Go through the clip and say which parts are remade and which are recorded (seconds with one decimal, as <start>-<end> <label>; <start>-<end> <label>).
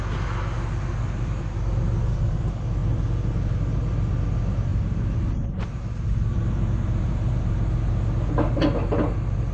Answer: 0.0-4.7 recorded; 4.7-7.9 remade; 7.9-9.5 recorded